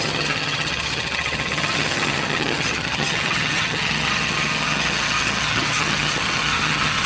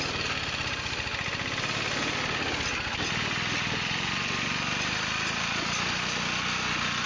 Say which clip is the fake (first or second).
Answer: first